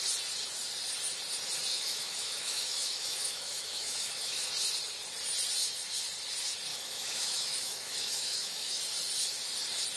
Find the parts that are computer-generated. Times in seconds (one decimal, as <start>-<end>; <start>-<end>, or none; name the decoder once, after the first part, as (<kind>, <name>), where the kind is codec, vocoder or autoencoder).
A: 1.7-4.5 (autoencoder, DAC-VAE); 6.7-8.8